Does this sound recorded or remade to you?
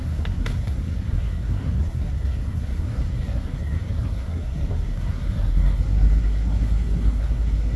remade